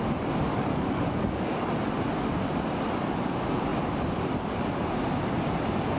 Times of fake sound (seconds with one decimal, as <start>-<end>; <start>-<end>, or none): 0.5-1.7